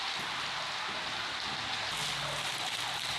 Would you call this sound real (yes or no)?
yes